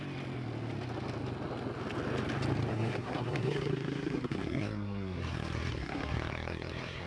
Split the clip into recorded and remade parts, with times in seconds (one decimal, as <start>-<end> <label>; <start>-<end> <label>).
0.0-2.7 recorded; 2.7-7.1 remade